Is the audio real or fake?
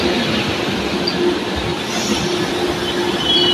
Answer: real